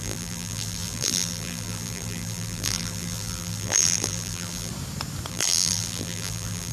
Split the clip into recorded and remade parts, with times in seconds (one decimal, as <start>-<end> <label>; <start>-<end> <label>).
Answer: 0.0-4.7 remade; 4.7-5.3 recorded; 5.3-6.7 remade

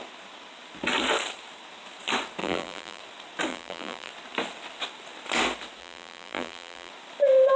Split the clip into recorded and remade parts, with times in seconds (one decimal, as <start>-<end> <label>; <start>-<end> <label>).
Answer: 0.0-2.4 recorded; 2.4-3.0 remade; 3.0-3.5 recorded; 3.5-4.1 remade; 4.1-5.8 recorded; 5.8-6.9 remade; 6.9-7.6 recorded

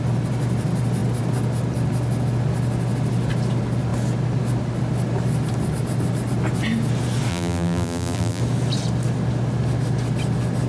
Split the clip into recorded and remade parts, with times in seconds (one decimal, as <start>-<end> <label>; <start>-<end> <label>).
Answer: 0.0-7.3 recorded; 7.3-8.4 remade; 8.4-10.7 recorded

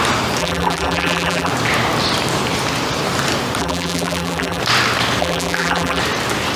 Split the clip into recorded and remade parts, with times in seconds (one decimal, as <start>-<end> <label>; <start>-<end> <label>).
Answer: 0.0-0.4 recorded; 0.4-1.5 remade; 1.5-3.6 recorded; 3.6-4.6 remade; 4.6-5.2 recorded; 5.2-6.0 remade; 6.0-6.6 recorded

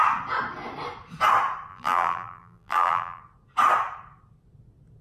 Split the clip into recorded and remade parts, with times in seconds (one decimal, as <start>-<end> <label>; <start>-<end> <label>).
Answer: 0.0-1.7 recorded; 1.7-3.2 remade; 3.2-5.0 recorded

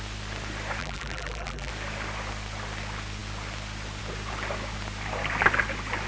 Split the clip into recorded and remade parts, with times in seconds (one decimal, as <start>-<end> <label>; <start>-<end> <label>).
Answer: 0.0-0.8 recorded; 0.8-1.7 remade; 1.7-6.1 recorded

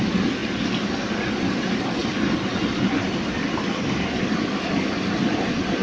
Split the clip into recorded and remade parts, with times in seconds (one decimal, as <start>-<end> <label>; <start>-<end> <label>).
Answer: 0.0-0.4 remade; 0.4-1.4 recorded; 1.4-2.0 remade; 2.0-5.8 recorded